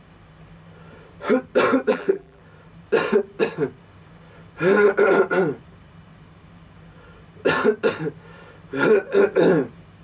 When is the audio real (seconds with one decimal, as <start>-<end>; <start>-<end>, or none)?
0.0-1.9; 2.4-10.0